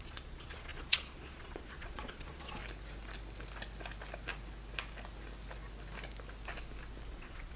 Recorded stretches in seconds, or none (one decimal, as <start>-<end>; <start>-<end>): 2.6-7.1